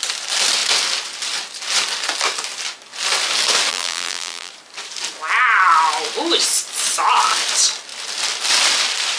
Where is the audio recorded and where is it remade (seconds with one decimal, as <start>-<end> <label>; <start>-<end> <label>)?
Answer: 0.0-3.7 recorded; 3.7-4.5 remade; 4.5-9.2 recorded